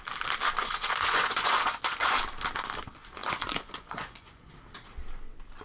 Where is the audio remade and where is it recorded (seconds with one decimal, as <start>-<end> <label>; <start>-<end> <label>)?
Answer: 0.0-0.6 recorded; 0.6-2.2 remade; 2.2-3.2 recorded; 3.2-4.4 remade; 4.4-5.6 recorded